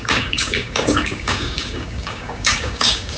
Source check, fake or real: fake